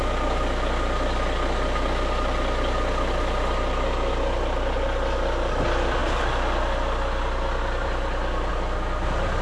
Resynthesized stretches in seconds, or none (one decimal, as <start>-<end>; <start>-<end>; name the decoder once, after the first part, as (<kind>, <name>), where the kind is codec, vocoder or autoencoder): none